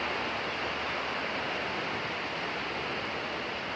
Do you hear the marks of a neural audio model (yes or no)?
no